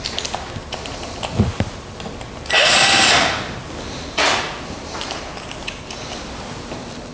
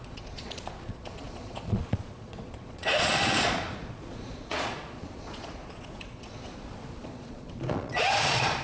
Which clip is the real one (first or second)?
first